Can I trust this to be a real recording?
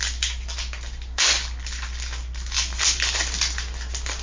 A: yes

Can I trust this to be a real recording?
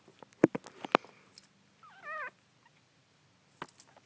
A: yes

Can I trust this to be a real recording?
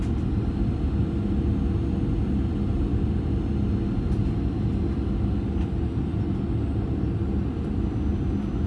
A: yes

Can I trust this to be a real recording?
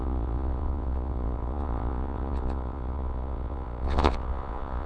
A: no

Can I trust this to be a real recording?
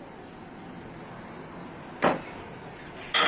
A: yes